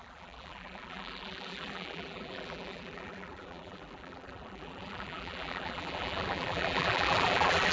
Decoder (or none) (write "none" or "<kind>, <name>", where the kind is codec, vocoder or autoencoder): vocoder, BigVGAN v2